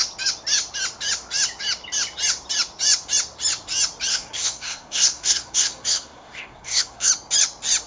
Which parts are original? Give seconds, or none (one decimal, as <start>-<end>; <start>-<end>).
0.0-4.1; 7.1-7.9